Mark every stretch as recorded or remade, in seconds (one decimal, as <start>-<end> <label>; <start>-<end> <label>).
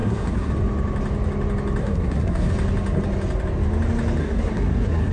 0.0-0.5 remade; 0.5-1.8 recorded; 1.8-2.5 remade; 2.5-4.2 recorded; 4.2-5.1 remade